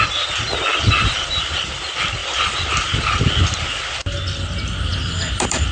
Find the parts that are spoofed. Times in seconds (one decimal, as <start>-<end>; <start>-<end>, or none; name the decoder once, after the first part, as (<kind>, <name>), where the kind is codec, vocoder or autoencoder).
0.7-1.3 (vocoder, BigVGAN v2); 2.2-3.2; 4.9-5.7